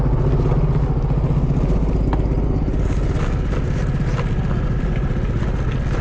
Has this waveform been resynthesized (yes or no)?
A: no